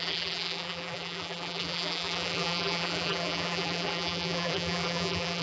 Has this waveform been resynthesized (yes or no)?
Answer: yes